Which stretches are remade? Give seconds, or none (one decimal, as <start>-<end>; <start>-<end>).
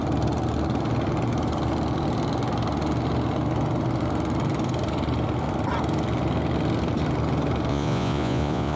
7.7-8.8